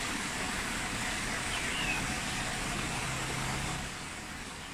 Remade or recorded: remade